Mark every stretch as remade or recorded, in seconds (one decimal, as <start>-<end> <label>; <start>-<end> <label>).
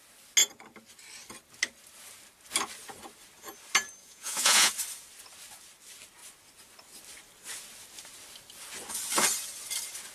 0.0-4.0 recorded; 4.0-4.7 remade; 4.7-10.1 recorded